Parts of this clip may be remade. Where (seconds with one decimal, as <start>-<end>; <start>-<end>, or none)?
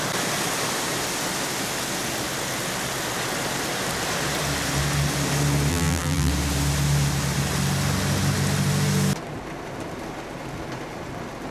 5.7-6.3